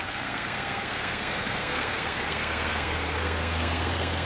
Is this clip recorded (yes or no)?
no